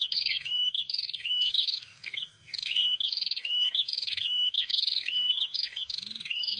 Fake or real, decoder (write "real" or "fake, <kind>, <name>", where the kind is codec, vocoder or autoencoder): fake, codec, DAC